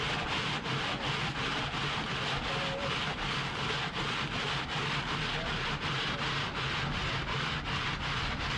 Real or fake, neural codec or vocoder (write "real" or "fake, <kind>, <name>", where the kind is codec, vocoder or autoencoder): real